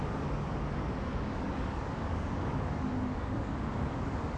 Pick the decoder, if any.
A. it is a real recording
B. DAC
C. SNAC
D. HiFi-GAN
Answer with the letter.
B